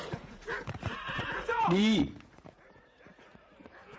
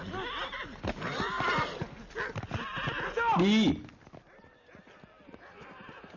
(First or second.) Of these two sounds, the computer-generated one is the first